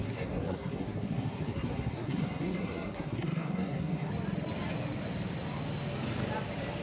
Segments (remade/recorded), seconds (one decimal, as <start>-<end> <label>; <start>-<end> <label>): 0.0-4.1 remade; 4.1-6.8 recorded